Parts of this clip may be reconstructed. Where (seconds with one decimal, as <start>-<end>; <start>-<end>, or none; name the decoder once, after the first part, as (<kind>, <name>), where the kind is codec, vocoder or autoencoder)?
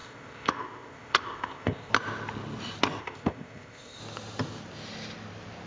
0.0-1.9 (codec, ZipCodec); 3.0-4.0